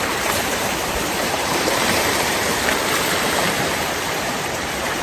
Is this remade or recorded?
remade